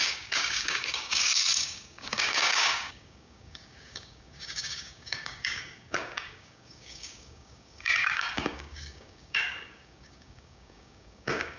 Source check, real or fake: fake